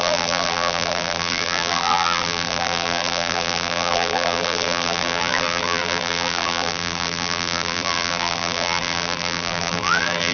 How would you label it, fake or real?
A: fake